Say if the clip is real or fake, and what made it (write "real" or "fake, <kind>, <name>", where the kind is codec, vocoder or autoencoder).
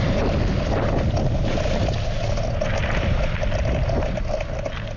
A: real